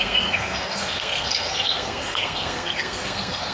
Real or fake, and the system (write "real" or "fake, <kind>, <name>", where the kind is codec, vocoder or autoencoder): fake, codec, SNAC